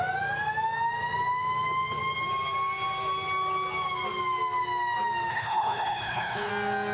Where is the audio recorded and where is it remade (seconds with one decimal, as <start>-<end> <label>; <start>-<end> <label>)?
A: 0.0-5.3 recorded; 5.3-6.5 remade; 6.5-6.9 recorded